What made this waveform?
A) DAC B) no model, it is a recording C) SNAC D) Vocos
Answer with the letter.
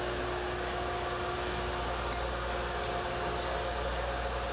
B